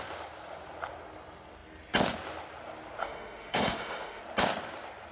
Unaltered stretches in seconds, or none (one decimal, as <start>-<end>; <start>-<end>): 0.0-3.0; 4.2-5.1